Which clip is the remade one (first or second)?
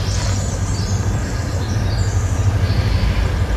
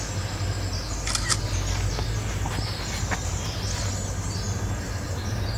first